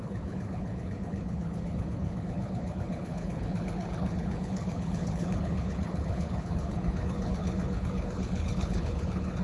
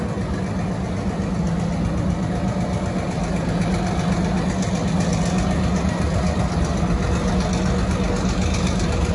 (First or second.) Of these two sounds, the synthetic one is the first